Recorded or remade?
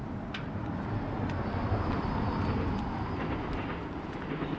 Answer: recorded